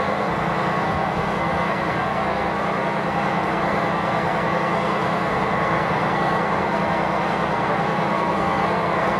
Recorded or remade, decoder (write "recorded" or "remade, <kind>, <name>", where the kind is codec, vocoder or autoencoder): remade, codec, SNAC